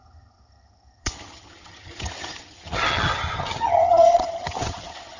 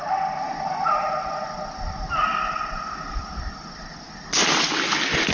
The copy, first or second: first